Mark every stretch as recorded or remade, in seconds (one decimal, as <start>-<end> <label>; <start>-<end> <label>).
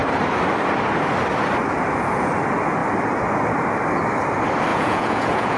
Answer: 0.0-4.7 recorded; 4.7-5.6 remade